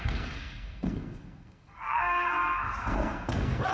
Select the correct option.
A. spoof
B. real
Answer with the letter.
A